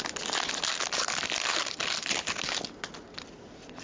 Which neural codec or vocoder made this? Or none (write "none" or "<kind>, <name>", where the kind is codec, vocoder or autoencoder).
none